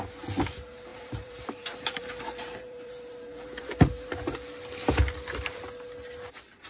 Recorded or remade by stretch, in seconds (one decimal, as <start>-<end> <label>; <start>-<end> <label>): 0.0-0.9 recorded; 0.9-4.2 remade; 4.2-6.7 recorded